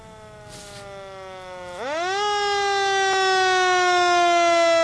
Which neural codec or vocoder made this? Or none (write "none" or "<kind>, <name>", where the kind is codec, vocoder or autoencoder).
none